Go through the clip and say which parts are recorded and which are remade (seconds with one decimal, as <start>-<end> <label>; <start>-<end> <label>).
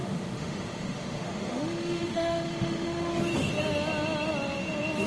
0.0-3.1 remade; 3.1-5.1 recorded